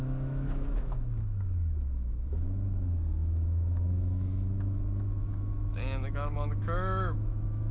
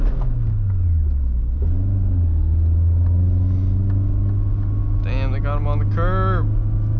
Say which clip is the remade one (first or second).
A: first